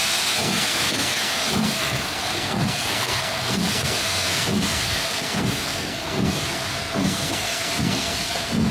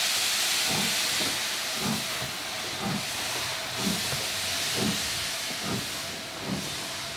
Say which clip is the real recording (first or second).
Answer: second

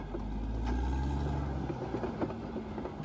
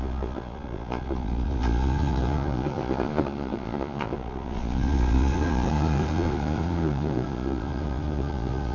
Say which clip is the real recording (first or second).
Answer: first